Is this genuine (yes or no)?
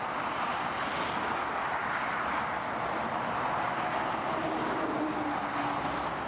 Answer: yes